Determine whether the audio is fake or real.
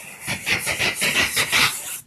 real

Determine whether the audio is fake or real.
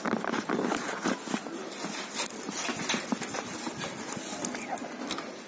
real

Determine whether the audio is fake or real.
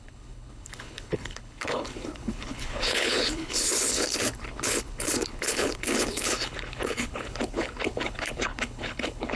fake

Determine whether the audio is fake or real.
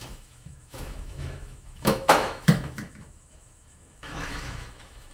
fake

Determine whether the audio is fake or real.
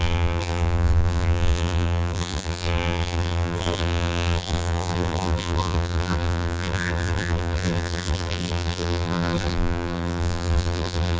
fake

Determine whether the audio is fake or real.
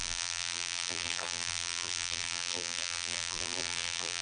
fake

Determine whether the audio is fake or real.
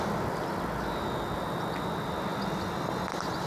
real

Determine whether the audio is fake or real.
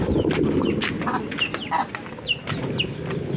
real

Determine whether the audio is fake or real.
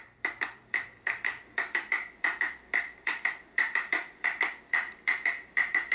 fake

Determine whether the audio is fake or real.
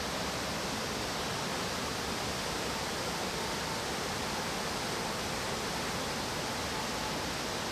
real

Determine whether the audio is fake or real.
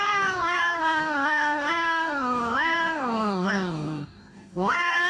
fake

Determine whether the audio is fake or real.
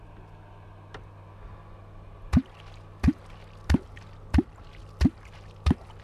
real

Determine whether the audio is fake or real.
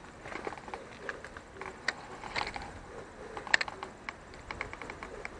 real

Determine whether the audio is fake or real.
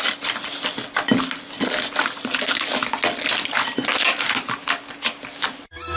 real